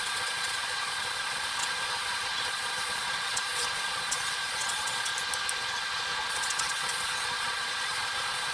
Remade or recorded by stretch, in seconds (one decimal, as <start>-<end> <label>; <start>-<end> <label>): 0.0-5.1 remade; 5.1-6.3 recorded; 6.3-8.5 remade